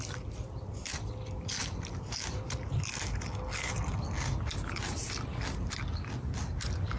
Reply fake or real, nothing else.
real